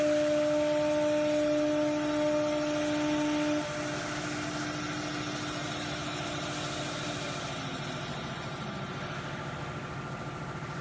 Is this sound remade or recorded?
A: recorded